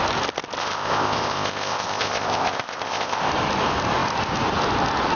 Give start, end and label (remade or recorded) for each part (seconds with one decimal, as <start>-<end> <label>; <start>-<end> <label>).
0.0-0.6 recorded; 0.6-3.3 remade; 3.3-5.1 recorded